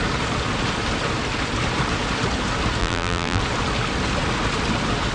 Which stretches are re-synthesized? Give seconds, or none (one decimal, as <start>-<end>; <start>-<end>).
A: 2.8-3.4